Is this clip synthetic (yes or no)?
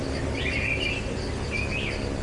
no